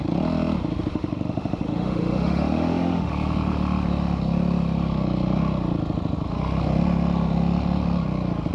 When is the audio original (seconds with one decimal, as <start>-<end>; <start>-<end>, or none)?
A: 0.0-0.9; 3.1-8.5